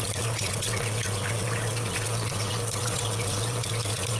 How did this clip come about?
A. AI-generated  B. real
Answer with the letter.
A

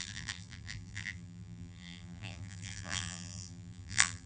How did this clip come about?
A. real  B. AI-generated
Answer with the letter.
B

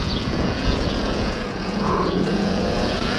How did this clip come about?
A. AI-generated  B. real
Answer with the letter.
A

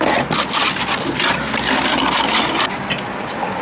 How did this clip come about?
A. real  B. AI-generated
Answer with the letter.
A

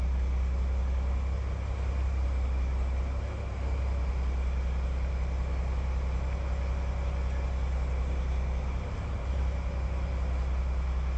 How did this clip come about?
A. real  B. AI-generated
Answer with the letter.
A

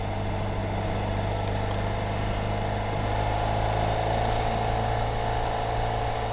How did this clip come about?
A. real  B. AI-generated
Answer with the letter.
A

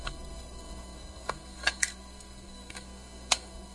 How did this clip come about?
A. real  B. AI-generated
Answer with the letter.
B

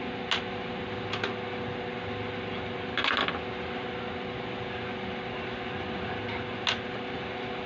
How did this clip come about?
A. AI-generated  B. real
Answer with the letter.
B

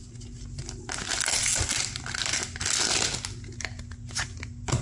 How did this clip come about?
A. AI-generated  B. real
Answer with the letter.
B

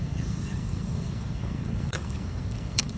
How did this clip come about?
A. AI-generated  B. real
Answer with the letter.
A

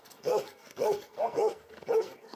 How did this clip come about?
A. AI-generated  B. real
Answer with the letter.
A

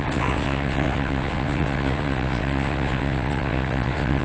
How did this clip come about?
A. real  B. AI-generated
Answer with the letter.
B